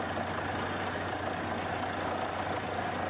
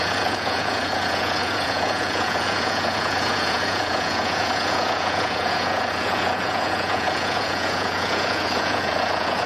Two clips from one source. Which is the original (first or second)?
first